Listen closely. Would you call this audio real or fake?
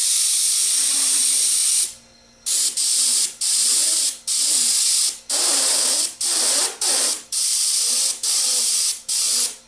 real